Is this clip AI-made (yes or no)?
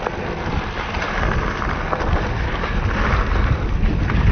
no